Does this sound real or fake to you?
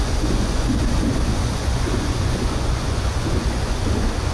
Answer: fake